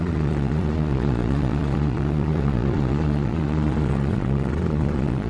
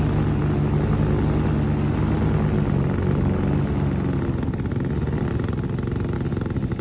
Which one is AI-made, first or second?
first